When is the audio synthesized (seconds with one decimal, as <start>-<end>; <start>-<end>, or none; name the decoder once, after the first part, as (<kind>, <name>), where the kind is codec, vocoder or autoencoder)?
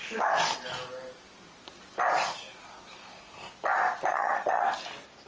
4.1-4.6 (vocoder, HiFi-GAN)